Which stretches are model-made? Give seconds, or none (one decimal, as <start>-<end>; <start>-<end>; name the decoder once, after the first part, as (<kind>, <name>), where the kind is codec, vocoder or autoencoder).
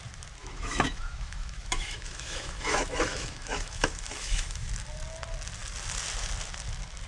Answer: 0.4-4.7 (autoencoder, DAC-VAE)